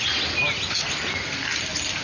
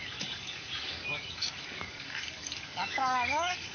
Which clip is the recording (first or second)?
first